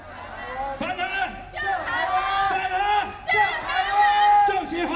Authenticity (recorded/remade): recorded